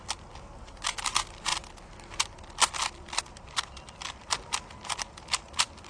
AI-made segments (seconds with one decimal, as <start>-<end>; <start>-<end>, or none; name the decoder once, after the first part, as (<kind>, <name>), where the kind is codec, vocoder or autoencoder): none